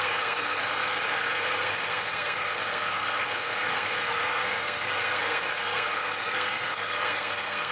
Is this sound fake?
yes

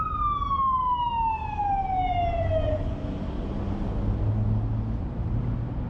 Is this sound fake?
no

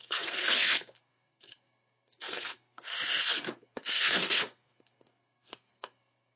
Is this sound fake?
yes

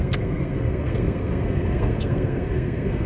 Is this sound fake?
yes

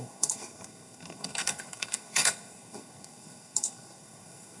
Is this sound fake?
yes